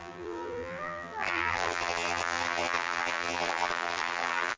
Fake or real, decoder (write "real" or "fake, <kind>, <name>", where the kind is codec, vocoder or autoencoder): fake, vocoder, BigVGAN v2